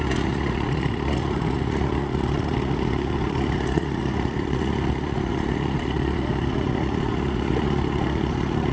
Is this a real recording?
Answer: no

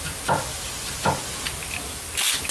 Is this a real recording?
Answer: yes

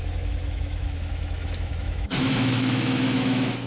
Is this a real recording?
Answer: no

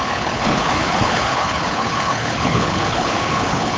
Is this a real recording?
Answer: no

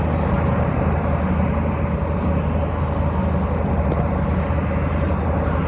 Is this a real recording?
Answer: yes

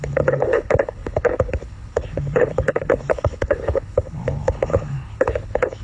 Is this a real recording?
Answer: no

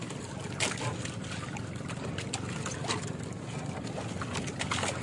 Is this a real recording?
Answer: yes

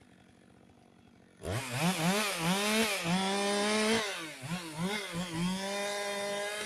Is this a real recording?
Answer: yes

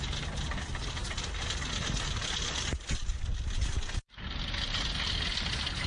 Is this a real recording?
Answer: yes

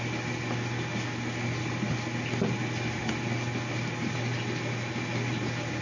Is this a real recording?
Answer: yes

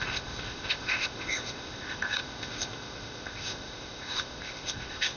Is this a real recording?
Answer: no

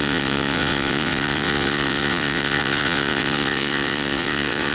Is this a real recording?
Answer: no